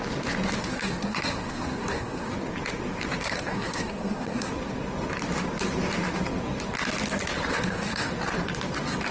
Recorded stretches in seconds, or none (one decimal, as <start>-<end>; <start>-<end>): 0.0-0.6; 2.3-3.2; 4.5-7.5; 8.1-9.1